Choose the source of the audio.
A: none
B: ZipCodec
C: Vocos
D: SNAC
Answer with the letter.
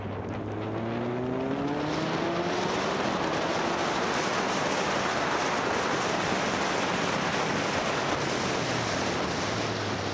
A